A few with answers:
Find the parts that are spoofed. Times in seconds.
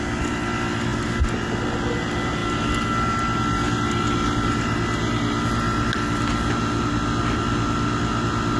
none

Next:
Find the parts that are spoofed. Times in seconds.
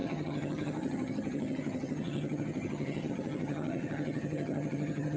0.0-5.2 (vocoder, HiFi-GAN)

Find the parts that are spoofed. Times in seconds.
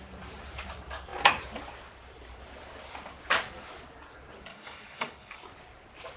4.5-5.4 (codec, DAC)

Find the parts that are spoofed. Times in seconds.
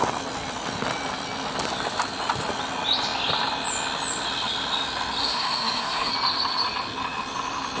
5.2-6.1 (codec, SNAC)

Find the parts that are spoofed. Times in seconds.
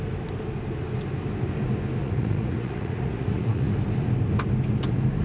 2.0-3.7 (vocoder, Vocos)